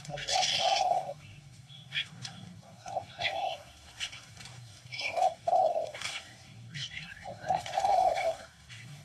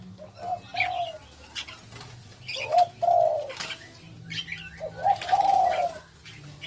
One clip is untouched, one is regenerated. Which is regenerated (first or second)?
first